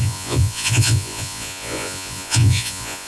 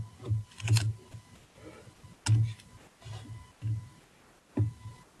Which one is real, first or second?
second